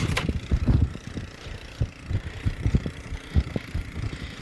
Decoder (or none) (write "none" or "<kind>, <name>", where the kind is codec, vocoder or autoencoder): vocoder, BigVGAN v2